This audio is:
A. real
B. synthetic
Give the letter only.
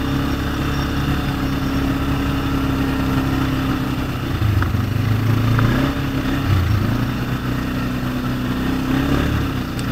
A